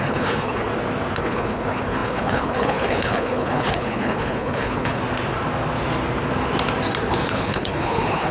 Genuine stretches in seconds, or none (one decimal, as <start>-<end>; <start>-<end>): 0.7-1.2; 5.0-7.3